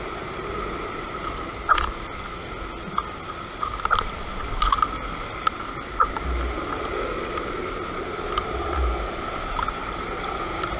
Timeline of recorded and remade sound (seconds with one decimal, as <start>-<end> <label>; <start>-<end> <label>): 0.0-7.6 recorded; 7.6-9.1 remade; 9.1-10.8 recorded